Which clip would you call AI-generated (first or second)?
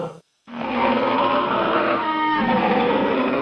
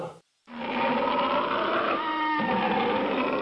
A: first